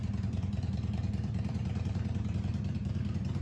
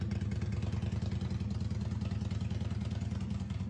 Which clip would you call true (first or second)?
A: second